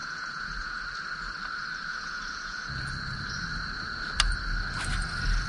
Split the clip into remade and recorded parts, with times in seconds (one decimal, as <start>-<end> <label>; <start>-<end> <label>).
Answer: 0.0-0.7 remade; 0.7-1.9 recorded; 1.9-2.6 remade; 2.6-5.5 recorded